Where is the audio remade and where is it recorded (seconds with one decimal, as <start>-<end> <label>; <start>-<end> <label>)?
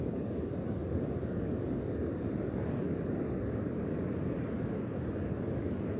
0.0-6.0 remade